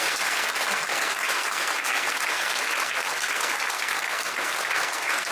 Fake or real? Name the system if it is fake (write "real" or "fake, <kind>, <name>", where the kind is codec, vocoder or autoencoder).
fake, codec, SNAC